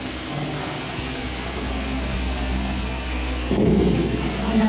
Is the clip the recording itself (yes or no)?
no